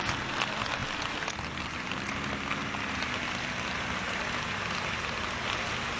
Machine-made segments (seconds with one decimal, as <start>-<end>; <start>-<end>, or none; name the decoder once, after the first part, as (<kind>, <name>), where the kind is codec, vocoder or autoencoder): none